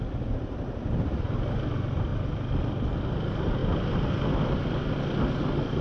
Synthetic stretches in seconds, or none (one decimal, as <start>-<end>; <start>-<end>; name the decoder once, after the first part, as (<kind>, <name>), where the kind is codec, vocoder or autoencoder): none